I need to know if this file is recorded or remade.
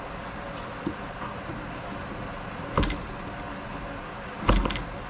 recorded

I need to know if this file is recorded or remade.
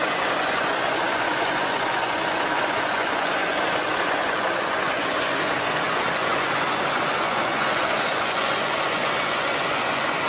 remade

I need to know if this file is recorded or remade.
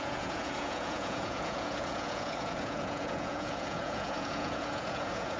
remade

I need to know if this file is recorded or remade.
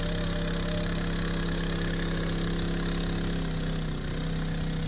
recorded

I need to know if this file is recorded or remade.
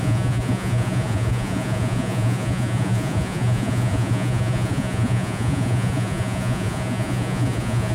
remade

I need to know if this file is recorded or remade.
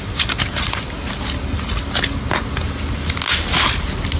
recorded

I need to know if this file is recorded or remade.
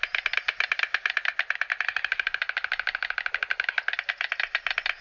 recorded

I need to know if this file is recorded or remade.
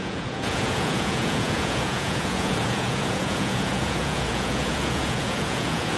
remade